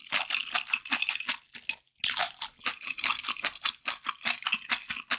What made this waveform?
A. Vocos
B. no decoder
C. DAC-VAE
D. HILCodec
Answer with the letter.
B